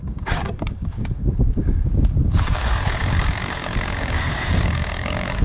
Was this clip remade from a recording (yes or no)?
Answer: yes